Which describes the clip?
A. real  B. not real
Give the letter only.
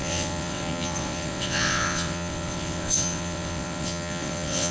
B